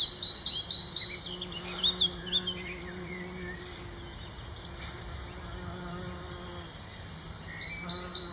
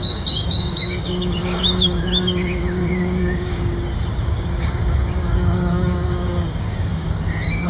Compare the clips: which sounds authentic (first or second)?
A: first